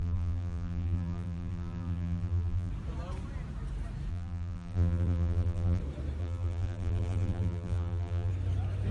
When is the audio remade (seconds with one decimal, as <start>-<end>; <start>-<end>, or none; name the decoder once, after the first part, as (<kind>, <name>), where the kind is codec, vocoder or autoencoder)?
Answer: 0.0-2.7 (vocoder, BigVGAN v2); 4.1-5.8; 6.2-8.3